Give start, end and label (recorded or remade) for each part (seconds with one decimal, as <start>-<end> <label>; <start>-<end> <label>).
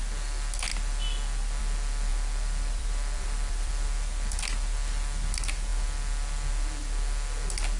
0.0-2.1 recorded; 2.1-3.7 remade; 3.7-7.8 recorded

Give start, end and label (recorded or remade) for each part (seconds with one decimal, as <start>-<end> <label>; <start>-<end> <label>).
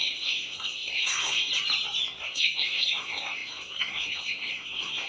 0.0-1.5 remade; 1.5-2.2 recorded; 2.2-5.1 remade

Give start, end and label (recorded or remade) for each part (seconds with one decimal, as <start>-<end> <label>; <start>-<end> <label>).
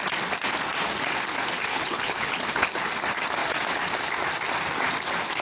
0.0-1.7 recorded; 1.7-2.8 remade; 2.8-5.4 recorded